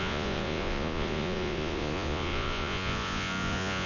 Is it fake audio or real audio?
fake